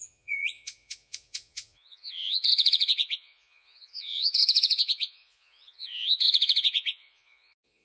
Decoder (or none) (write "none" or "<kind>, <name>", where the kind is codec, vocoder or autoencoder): vocoder, Vocos